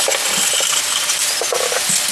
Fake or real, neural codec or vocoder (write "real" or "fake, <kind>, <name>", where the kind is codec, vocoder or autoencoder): real